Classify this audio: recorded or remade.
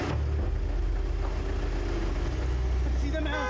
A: recorded